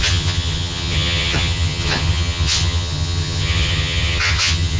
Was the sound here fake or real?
fake